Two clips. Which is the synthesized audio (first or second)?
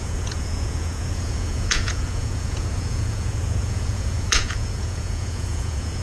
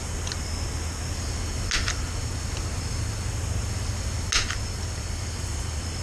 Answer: first